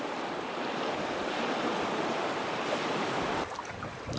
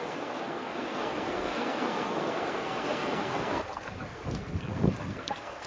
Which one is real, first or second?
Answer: first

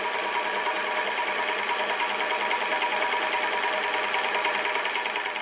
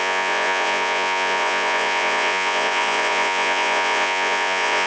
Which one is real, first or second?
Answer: first